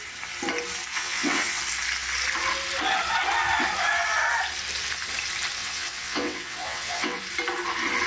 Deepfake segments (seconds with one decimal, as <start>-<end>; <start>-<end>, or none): 0.9-1.6; 5.6-7.2